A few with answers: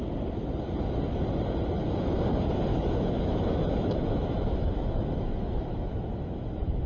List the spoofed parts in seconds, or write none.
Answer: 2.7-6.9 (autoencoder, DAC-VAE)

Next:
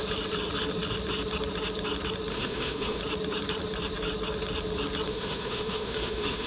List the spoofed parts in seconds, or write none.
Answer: 2.3-3.0 (autoencoder, DAC-VAE); 5.1-6.5